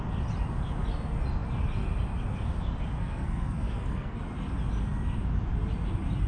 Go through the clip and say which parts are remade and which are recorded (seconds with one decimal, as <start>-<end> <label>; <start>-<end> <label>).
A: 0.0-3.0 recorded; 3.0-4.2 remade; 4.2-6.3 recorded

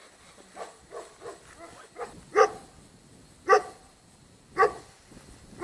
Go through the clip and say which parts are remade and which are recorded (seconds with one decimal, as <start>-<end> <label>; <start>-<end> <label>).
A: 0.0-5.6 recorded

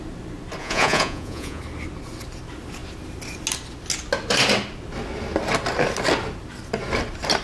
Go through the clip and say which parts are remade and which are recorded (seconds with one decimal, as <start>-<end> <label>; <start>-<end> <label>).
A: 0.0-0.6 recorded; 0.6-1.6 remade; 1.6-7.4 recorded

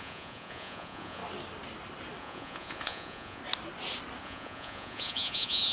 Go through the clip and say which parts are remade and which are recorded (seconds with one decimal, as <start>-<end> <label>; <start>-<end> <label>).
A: 0.0-1.2 remade; 1.2-2.2 recorded; 2.2-3.4 remade; 3.4-4.2 recorded; 4.2-5.7 remade

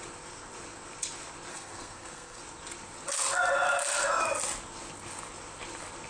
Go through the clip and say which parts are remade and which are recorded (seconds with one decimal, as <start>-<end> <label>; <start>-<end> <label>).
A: 0.0-1.5 recorded; 1.5-2.4 remade; 2.4-6.1 recorded

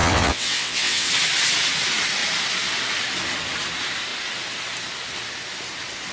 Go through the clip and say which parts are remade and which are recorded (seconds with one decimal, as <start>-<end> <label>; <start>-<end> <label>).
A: 0.0-1.1 remade; 1.1-6.1 recorded

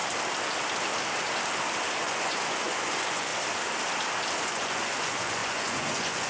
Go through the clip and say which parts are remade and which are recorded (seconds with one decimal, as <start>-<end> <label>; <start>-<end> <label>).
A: 0.0-2.0 recorded; 2.0-3.3 remade; 3.3-4.4 recorded; 4.4-6.3 remade